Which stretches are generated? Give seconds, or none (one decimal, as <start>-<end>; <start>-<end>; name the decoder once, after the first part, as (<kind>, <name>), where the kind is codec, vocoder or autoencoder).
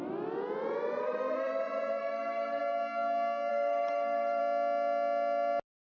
1.0-1.6 (codec, SNAC); 2.0-2.6; 3.5-4.4